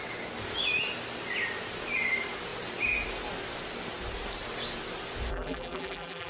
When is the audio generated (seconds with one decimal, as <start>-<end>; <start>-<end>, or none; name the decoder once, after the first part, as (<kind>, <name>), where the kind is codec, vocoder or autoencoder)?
5.3-6.3 (vocoder, BigVGAN v2)